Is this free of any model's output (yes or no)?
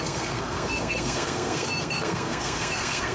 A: no